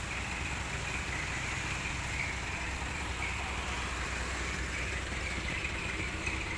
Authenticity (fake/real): real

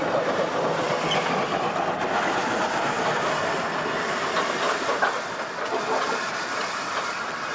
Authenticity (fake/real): real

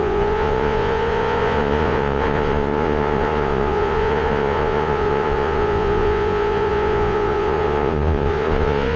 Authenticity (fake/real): fake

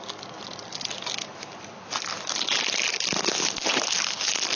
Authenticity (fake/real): real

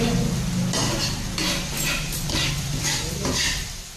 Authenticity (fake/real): fake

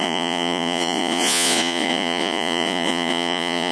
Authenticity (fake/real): fake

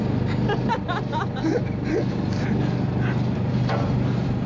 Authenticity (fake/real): real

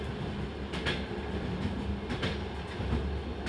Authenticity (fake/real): real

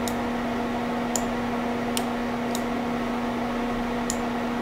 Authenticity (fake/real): real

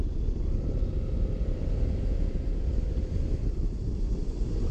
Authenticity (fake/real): real